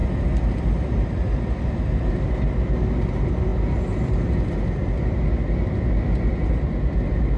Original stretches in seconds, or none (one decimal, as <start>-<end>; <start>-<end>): 0.0-7.4